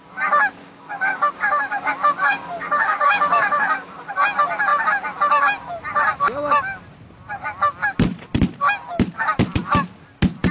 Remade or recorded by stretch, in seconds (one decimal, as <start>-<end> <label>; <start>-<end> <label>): 0.0-0.6 recorded; 0.6-4.1 remade; 4.1-10.5 recorded